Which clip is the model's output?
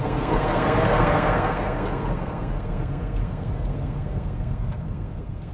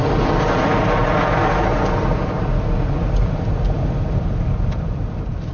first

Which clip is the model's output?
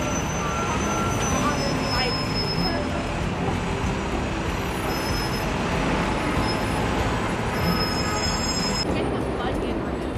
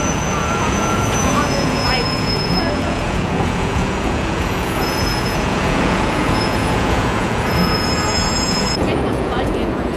second